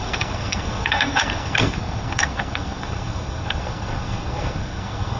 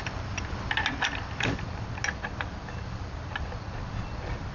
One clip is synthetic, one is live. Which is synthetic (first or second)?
first